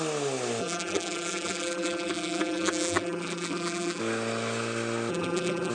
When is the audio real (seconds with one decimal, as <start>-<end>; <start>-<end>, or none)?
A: 0.0-0.6; 4.0-5.1